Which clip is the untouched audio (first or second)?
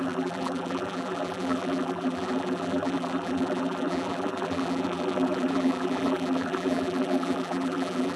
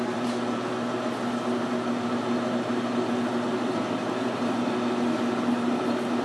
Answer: second